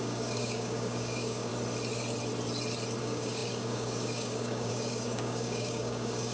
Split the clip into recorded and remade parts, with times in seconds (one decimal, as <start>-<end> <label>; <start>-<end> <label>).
0.0-1.5 remade; 1.5-3.0 recorded; 3.0-6.3 remade